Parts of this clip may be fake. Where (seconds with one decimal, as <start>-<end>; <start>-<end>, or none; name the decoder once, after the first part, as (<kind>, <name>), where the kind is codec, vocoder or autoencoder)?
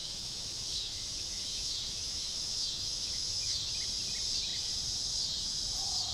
0.0-3.7 (autoencoder, DAC-VAE)